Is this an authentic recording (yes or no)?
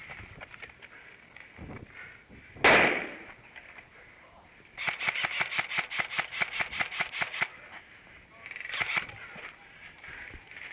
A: yes